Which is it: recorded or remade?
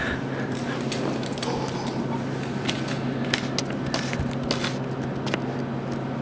recorded